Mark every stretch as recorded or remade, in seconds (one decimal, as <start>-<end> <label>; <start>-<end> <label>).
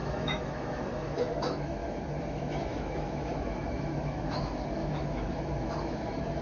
0.0-6.4 remade